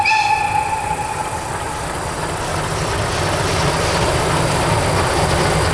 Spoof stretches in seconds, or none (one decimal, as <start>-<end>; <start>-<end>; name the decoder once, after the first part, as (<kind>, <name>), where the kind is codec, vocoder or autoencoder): none